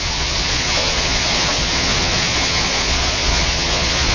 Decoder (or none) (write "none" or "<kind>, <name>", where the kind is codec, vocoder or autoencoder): vocoder, Vocos